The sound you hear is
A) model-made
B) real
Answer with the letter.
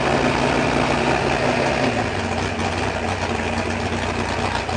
B